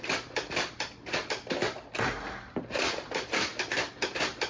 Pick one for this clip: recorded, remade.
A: remade